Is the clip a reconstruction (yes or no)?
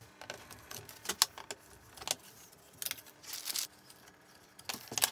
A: no